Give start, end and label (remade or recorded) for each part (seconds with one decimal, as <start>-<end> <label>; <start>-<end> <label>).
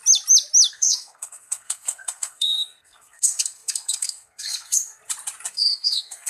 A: 0.0-0.7 recorded; 0.7-5.0 remade; 5.0-5.5 recorded; 5.5-6.3 remade